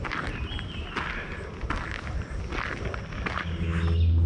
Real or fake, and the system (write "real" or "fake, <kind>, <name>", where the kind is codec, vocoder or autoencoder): real